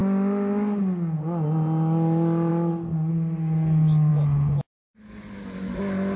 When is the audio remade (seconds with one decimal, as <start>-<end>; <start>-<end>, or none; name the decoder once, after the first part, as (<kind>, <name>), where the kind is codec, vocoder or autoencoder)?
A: none